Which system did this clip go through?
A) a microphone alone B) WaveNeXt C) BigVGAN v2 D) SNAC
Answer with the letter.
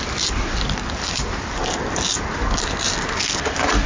A